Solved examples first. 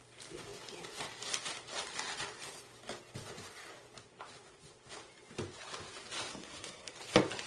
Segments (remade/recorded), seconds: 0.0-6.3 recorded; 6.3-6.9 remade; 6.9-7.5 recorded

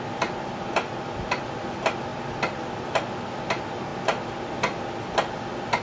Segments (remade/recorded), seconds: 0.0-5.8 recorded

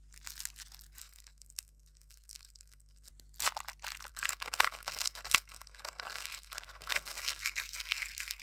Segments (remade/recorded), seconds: 0.0-1.0 recorded; 1.0-3.1 remade; 3.1-4.1 recorded; 4.1-8.4 remade

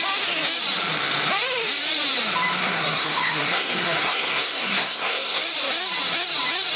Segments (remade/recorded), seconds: 0.0-2.6 recorded; 2.6-5.4 remade; 5.4-6.8 recorded

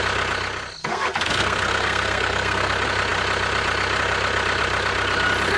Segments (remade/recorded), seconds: 0.0-0.8 recorded; 0.8-2.7 remade; 2.7-5.6 recorded